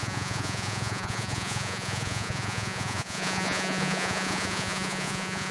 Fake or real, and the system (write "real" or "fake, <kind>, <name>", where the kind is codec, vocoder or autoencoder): fake, vocoder, Vocos